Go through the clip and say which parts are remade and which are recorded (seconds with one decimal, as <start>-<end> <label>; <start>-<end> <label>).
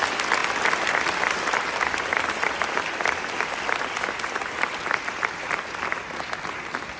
0.0-7.0 recorded